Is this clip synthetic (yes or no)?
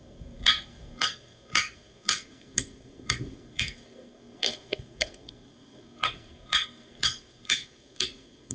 yes